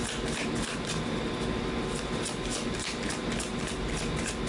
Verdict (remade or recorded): recorded